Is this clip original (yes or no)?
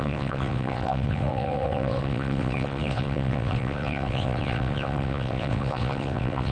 no